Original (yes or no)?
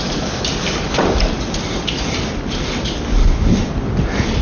yes